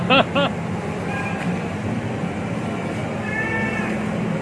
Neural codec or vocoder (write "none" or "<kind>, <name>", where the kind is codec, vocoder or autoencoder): none